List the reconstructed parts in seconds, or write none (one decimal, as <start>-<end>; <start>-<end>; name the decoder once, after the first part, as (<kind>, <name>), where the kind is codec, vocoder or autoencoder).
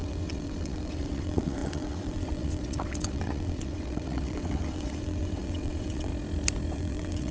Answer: 0.0-6.1 (vocoder, WaveNeXt); 6.7-7.3